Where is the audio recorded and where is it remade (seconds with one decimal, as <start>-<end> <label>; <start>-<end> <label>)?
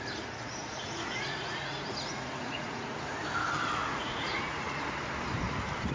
0.0-0.6 recorded; 0.6-3.0 remade; 3.0-3.8 recorded; 3.8-4.9 remade; 4.9-5.9 recorded